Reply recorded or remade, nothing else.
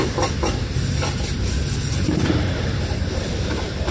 remade